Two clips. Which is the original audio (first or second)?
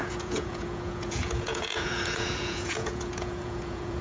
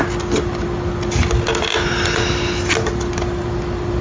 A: second